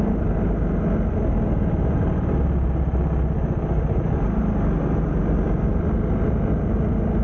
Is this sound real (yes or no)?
yes